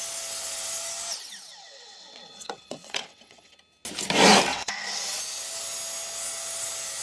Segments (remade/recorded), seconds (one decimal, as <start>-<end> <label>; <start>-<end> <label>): 0.0-1.5 recorded; 1.5-3.5 remade; 3.5-4.5 recorded; 4.5-5.2 remade; 5.2-7.0 recorded